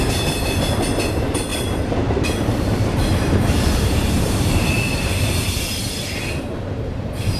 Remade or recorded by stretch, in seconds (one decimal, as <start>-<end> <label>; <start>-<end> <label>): 0.0-1.5 recorded; 1.5-5.9 remade; 5.9-7.4 recorded